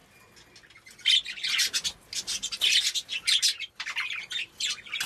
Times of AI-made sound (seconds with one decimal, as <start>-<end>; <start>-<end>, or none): 3.1-4.5